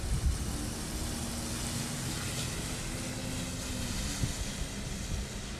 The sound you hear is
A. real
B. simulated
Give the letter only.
A